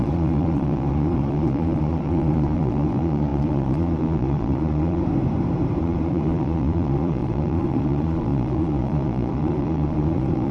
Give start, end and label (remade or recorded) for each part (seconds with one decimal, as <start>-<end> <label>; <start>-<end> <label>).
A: 0.0-5.0 remade; 5.0-5.8 recorded; 5.8-10.5 remade